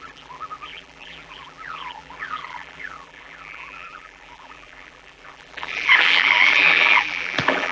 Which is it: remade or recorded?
remade